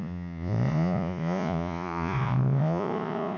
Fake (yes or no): yes